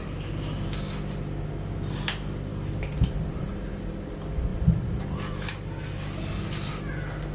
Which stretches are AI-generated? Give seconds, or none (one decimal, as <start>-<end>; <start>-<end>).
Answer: none